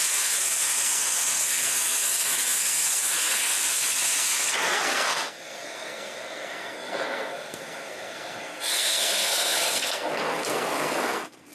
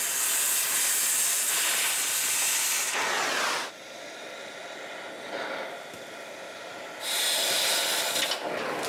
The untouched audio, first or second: second